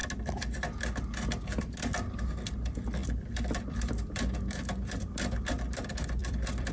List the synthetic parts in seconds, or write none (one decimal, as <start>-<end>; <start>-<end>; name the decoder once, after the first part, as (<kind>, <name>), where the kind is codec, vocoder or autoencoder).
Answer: 3.0-5.4 (vocoder, BigVGAN v2); 6.2-6.7

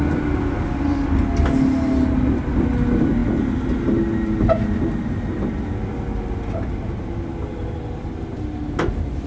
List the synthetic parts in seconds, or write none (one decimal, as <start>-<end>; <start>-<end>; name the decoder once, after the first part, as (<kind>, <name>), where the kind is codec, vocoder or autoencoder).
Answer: none

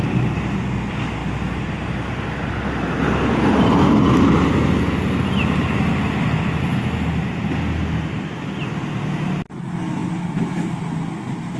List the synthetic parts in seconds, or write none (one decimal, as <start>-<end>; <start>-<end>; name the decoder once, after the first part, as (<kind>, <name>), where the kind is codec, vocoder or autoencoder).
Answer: none